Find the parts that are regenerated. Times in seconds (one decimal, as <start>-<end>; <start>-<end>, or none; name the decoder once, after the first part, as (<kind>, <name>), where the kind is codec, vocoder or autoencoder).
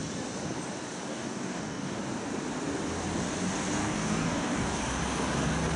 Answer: 1.1-2.0 (codec, DAC); 3.8-4.8